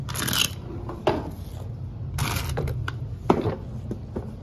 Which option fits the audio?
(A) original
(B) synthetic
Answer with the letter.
A